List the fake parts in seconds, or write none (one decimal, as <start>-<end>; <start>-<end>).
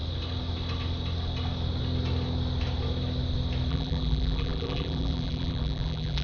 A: 3.7-6.2